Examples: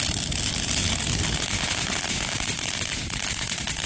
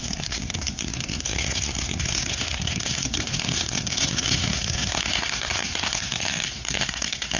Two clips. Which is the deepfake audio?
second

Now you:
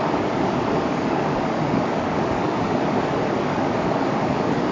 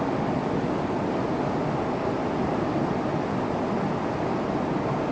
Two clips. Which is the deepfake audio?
first